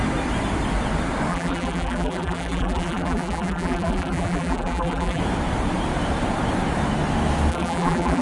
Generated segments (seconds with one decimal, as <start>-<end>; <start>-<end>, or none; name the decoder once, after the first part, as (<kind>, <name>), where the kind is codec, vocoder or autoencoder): 1.3-5.2 (vocoder, BigVGAN v2); 7.5-8.2